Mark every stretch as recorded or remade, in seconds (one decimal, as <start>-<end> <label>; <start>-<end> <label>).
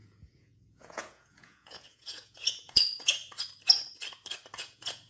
0.0-3.2 remade; 3.2-4.6 recorded; 4.6-5.1 remade